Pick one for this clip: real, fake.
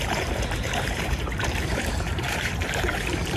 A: fake